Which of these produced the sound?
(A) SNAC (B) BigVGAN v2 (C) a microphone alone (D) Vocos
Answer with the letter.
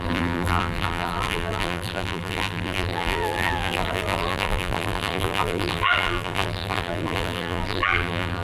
B